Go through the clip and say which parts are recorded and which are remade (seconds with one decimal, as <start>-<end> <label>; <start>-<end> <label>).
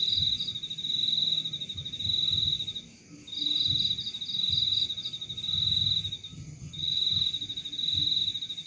0.0-6.3 recorded; 6.3-7.0 remade; 7.0-8.7 recorded